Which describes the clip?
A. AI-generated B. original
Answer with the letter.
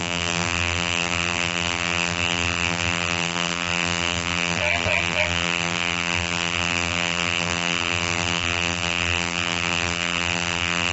A